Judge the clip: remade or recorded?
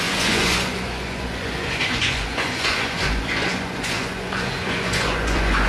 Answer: remade